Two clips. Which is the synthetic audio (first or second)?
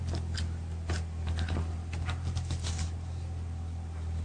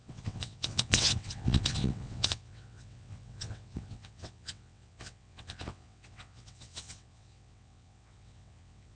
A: second